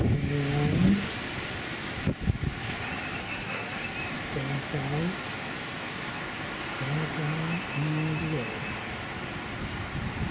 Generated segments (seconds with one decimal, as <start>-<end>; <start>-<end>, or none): 3.2-3.8